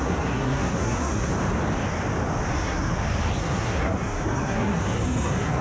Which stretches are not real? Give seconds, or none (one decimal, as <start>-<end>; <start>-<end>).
0.0-1.3; 2.5-2.9; 3.4-5.6